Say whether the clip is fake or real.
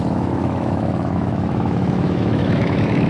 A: fake